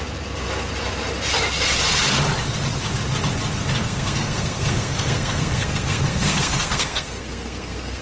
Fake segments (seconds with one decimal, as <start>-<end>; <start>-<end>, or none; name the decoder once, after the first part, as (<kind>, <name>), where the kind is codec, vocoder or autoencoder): 3.8-8.0 (codec, SNAC)